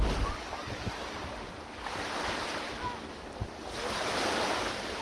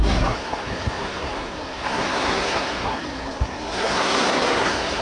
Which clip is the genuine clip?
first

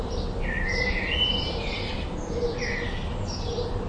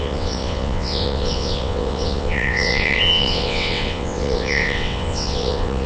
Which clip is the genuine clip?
first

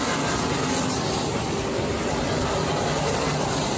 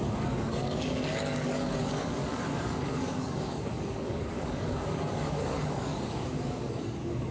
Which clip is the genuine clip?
first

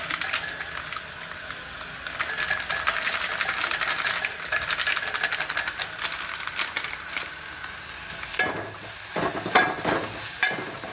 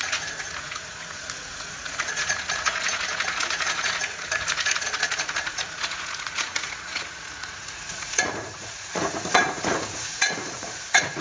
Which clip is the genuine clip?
first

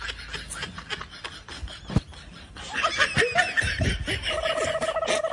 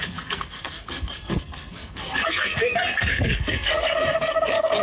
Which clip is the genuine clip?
first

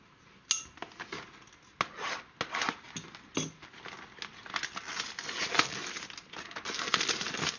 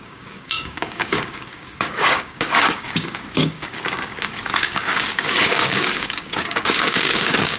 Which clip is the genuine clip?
first